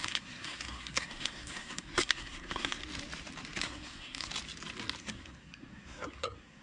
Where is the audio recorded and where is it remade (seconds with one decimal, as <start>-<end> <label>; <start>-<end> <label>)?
0.0-2.8 remade; 2.8-3.6 recorded; 3.6-4.3 remade; 4.3-5.0 recorded; 5.0-6.6 remade